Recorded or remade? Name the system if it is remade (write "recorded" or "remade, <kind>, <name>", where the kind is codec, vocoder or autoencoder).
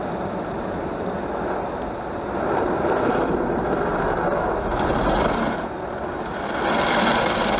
recorded